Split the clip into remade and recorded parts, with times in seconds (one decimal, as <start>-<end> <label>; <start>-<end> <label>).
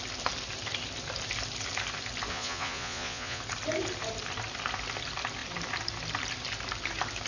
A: 0.0-2.3 recorded; 2.3-3.4 remade; 3.4-7.3 recorded